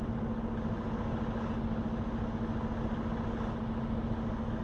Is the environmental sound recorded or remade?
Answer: recorded